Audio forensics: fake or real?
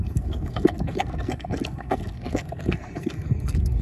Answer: fake